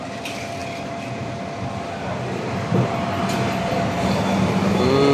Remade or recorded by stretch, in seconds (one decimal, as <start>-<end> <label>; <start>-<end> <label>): 0.0-5.1 recorded